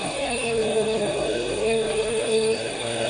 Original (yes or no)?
no